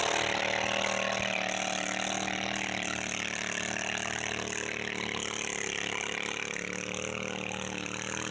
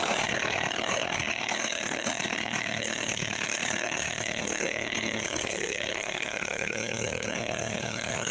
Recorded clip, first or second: first